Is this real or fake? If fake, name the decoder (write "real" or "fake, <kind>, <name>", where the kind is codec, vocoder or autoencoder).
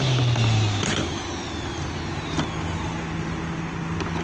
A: real